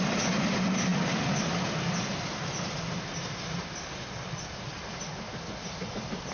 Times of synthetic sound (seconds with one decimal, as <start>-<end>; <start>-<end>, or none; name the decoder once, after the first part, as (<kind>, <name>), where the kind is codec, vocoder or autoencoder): none